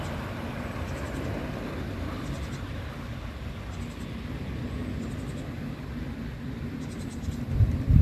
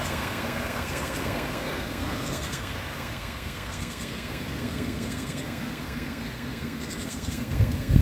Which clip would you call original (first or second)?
first